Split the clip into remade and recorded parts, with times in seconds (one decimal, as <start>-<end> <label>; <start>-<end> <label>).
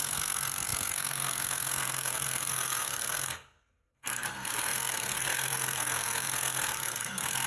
0.0-7.5 remade